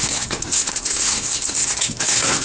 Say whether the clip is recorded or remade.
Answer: remade